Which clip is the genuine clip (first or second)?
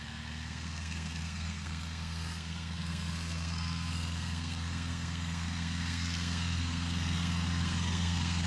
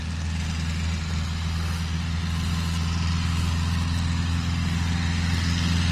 second